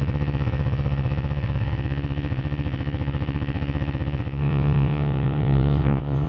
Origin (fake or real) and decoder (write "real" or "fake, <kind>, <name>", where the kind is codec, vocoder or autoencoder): fake, vocoder, WaveNeXt